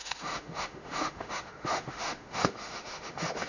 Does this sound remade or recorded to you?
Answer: remade